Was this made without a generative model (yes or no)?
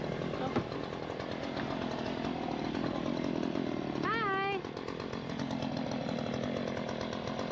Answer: yes